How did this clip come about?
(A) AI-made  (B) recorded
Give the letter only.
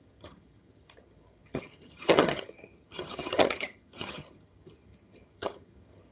A